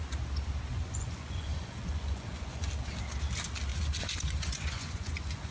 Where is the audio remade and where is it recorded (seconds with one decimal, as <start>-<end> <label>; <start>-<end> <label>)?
0.0-0.7 recorded; 0.7-2.7 remade; 2.7-3.7 recorded; 3.7-5.5 remade